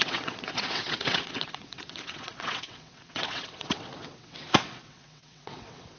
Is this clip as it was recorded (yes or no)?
no